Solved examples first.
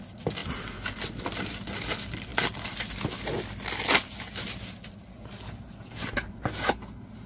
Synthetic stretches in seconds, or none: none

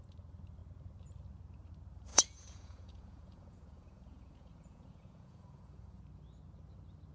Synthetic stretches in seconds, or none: 2.1-6.0 (vocoder, Vocos)

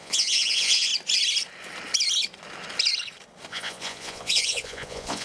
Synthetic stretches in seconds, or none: 0.0-0.9 (vocoder, Vocos); 3.5-5.2

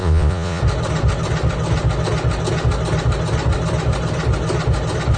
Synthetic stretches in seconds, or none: 0.0-0.6 (vocoder, Vocos)

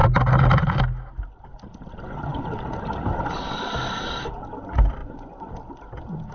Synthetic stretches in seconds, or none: 5.0-5.5 (vocoder, Vocos)

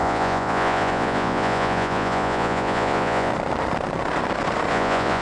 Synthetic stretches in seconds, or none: 0.0-3.3 (vocoder, Vocos); 4.7-5.2